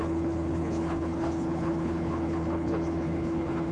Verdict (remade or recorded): remade